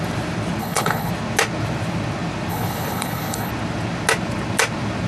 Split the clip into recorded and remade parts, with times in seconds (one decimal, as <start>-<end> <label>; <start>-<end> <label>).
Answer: 0.0-0.6 recorded; 0.6-1.1 remade; 1.1-2.5 recorded; 2.5-3.5 remade; 3.5-5.1 recorded